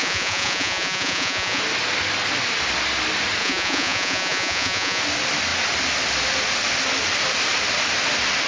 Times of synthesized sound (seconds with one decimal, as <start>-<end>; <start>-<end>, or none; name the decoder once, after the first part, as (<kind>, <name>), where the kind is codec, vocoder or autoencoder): 0.0-1.6 (vocoder, Vocos); 3.4-5.0